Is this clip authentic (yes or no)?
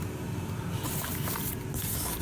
yes